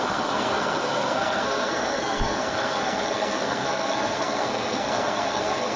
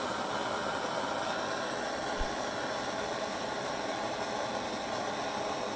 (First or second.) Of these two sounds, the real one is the second